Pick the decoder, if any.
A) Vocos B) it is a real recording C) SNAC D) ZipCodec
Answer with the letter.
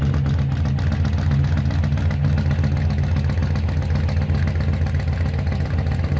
B